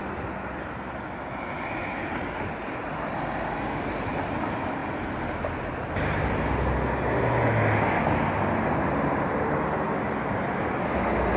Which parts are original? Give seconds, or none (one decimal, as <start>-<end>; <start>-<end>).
0.0-11.4